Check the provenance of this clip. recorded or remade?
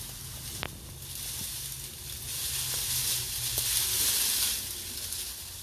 recorded